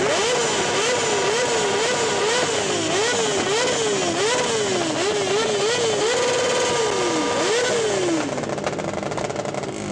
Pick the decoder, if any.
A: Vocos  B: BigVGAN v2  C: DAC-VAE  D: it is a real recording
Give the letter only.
D